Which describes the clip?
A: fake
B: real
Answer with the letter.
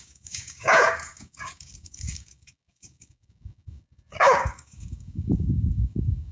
A